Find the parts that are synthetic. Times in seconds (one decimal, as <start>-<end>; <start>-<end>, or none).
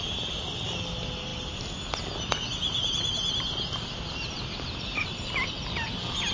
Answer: none